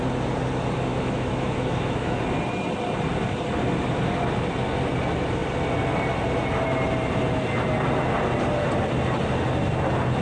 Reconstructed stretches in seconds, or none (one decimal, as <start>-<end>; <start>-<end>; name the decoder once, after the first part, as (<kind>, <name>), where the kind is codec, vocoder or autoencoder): 0.9-2.2 (autoencoder, DAC-VAE)